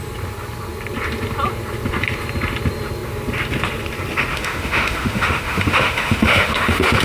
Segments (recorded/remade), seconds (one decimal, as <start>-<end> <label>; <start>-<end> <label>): 0.0-4.3 recorded; 4.3-7.0 remade